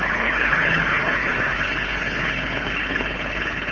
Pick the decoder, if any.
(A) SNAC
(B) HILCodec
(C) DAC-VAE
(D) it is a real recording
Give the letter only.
B